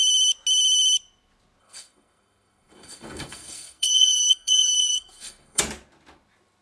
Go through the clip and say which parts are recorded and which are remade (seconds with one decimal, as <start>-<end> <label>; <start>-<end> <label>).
0.0-1.6 recorded; 1.6-5.6 remade; 5.6-6.6 recorded

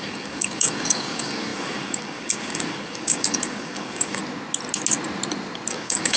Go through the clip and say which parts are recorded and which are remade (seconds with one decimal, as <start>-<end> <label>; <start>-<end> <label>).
0.0-4.2 remade; 4.2-5.7 recorded; 5.7-6.2 remade